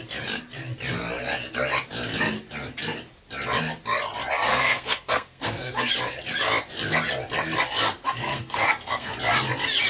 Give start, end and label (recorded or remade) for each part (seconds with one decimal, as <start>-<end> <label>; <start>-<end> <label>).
0.0-4.5 recorded; 4.5-5.9 remade; 5.9-8.3 recorded; 8.3-9.1 remade; 9.1-9.9 recorded